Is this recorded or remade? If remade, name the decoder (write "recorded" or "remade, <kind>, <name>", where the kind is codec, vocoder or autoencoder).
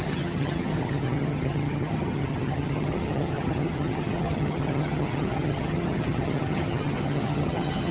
remade, vocoder, HiFi-GAN